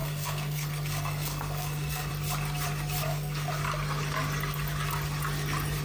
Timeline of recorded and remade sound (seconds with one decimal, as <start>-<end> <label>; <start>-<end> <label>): 0.0-2.1 remade; 2.1-3.0 recorded; 3.0-3.6 remade; 3.6-5.8 recorded

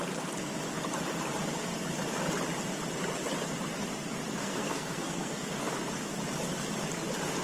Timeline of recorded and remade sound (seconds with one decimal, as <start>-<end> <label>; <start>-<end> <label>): 0.0-4.3 recorded; 4.3-5.7 remade; 5.7-7.4 recorded

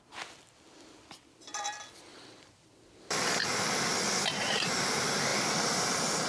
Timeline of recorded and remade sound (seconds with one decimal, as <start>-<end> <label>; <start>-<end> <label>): 0.0-6.3 recorded

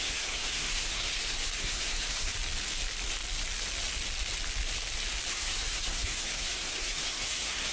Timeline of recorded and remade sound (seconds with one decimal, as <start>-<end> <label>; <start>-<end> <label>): 0.0-2.3 remade; 2.3-5.3 recorded; 5.3-7.7 remade

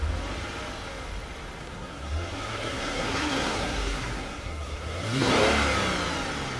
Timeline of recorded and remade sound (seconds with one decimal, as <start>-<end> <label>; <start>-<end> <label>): 0.0-1.6 recorded; 1.6-5.3 remade; 5.3-6.6 recorded

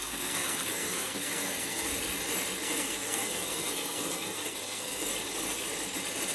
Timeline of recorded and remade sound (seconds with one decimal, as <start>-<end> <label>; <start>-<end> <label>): 0.0-1.9 remade; 1.9-2.6 recorded; 2.6-5.1 remade; 5.1-6.3 recorded

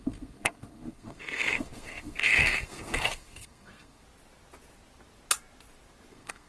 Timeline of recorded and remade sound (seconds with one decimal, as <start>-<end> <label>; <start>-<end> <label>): 0.0-4.0 remade; 4.0-6.1 recorded; 6.1-6.5 remade